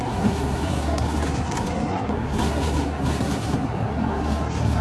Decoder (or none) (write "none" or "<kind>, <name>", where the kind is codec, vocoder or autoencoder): codec, SNAC